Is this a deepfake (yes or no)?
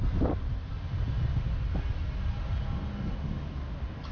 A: no